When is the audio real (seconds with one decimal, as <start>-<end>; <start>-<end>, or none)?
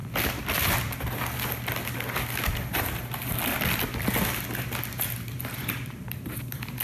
0.0-4.9